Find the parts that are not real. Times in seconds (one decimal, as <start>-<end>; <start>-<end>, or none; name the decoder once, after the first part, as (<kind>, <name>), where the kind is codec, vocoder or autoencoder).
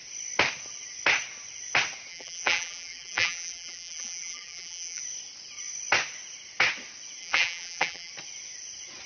2.1-5.0 (vocoder, BigVGAN v2); 7.2-8.1